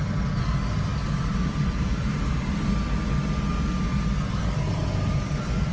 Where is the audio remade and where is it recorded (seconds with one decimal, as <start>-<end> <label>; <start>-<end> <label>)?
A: 0.0-5.7 recorded